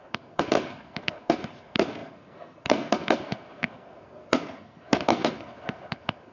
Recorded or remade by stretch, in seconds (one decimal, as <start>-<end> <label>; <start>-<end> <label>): 0.0-6.3 remade